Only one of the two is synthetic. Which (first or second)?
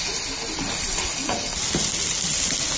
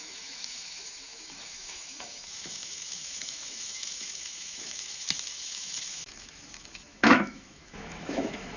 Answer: second